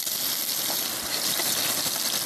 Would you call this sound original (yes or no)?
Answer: yes